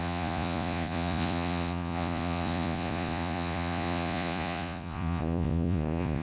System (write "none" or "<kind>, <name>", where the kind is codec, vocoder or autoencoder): vocoder, Vocos